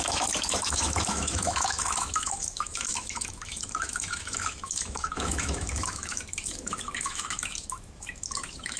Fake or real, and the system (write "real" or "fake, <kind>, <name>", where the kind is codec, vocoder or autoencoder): fake, autoencoder, DAC-VAE